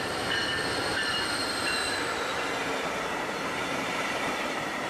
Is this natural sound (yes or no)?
no